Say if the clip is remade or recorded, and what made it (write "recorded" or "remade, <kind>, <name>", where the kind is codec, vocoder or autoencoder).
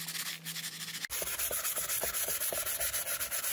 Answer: recorded